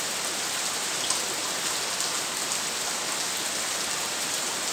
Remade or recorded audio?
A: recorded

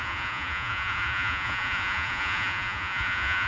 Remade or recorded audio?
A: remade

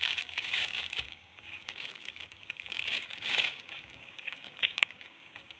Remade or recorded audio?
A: remade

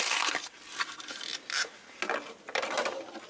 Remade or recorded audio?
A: recorded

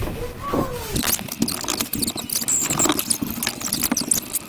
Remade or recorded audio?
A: recorded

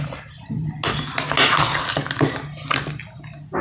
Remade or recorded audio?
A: recorded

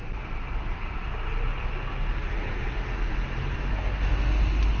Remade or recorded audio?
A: recorded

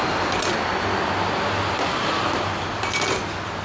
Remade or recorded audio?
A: recorded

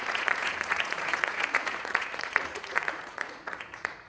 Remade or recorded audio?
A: remade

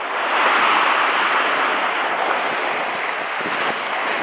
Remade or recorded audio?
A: recorded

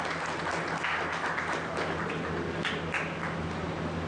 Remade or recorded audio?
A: recorded